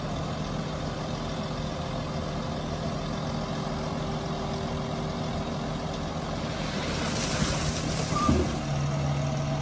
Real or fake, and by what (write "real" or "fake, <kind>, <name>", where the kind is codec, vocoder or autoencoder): real